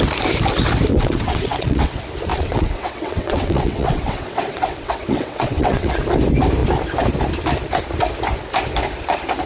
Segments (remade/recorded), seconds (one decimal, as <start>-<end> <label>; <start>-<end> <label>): 0.0-0.9 recorded; 0.9-1.9 remade; 1.9-2.3 recorded; 2.3-5.9 remade; 5.9-9.5 recorded